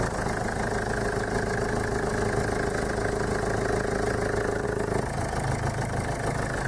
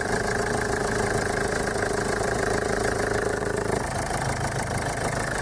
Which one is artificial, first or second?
second